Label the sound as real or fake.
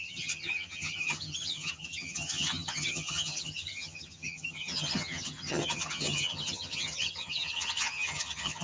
fake